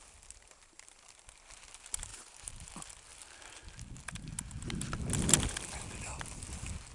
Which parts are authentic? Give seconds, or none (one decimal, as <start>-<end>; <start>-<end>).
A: 0.0-2.1; 2.7-6.9